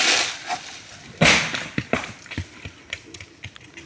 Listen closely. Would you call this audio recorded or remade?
recorded